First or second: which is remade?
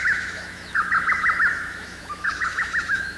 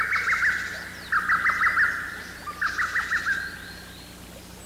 first